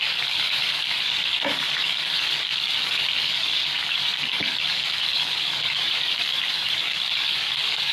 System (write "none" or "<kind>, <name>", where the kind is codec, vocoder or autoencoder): codec, DAC